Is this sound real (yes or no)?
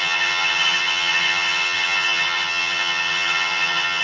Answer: no